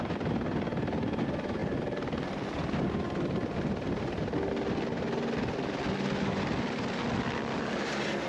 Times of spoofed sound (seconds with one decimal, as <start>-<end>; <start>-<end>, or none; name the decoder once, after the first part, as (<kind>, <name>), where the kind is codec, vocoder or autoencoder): none